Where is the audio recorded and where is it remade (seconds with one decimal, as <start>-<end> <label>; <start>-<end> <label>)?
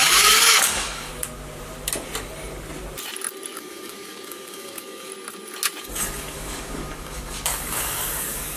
0.0-1.1 remade; 1.1-3.6 recorded; 3.6-5.1 remade; 5.1-5.8 recorded; 5.8-8.6 remade